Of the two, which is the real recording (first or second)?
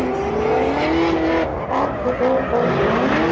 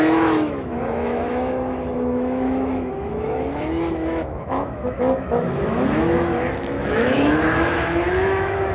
first